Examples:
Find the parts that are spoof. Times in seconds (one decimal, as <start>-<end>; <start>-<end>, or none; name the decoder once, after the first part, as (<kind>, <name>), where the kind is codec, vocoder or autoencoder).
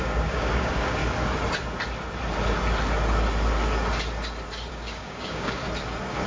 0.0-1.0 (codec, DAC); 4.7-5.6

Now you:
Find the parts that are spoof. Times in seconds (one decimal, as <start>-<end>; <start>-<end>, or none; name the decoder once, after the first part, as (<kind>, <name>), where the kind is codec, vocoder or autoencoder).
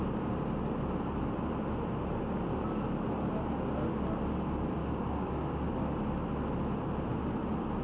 4.8-5.7 (codec, DAC)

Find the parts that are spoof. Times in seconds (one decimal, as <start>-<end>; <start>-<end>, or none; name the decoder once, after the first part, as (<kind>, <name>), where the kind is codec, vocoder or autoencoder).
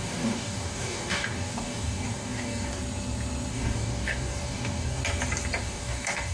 0.0-2.8 (codec, DAC); 3.5-5.0; 5.6-6.3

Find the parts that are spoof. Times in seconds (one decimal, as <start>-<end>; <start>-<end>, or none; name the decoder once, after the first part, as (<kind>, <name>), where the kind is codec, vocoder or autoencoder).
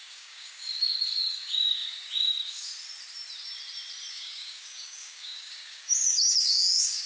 0.0-2.7 (codec, DAC); 4.1-7.1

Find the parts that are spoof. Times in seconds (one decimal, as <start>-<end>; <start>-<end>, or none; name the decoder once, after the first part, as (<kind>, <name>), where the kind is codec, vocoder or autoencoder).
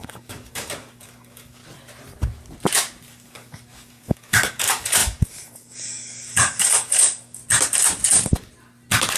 0.0-1.6 (codec, DAC); 3.1-7.4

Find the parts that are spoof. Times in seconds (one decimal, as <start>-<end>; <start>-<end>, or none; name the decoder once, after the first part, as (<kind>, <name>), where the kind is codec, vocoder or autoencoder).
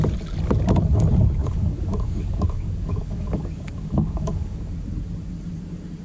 1.4-4.7 (codec, DAC)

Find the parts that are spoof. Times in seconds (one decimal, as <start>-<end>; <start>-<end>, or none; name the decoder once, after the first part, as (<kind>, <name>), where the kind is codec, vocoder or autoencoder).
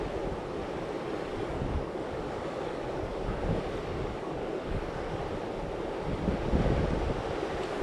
1.3-5.2 (codec, DAC)